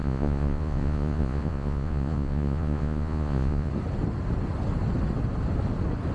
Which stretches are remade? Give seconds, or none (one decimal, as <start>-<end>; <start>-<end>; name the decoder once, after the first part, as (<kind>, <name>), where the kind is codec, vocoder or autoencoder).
0.0-3.7 (vocoder, Vocos)

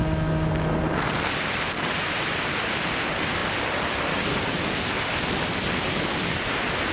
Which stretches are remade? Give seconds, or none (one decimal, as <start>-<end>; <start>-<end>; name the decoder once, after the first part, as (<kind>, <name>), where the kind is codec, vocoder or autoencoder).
none

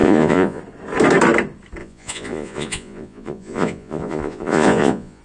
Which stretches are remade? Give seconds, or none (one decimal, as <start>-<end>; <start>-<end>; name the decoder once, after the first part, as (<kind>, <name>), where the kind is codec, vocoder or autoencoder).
0.0-0.6 (vocoder, Vocos); 1.8-5.2

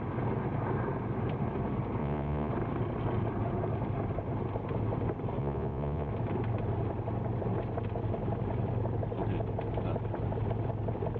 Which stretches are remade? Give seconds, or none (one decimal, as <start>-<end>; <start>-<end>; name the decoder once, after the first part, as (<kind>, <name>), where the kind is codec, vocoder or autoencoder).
2.0-2.5 (vocoder, Vocos); 5.4-6.1

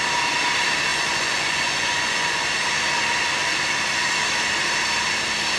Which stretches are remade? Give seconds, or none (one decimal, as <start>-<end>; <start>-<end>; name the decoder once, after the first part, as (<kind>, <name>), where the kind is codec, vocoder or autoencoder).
0.9-2.4 (vocoder, Vocos)